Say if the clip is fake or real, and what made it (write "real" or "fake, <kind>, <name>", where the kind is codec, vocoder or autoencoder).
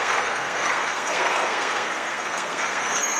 fake, codec, SNAC